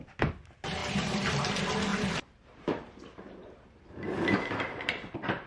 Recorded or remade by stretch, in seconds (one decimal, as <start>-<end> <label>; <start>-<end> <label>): 0.0-0.8 recorded; 0.8-1.5 remade; 1.5-1.9 recorded; 1.9-5.5 remade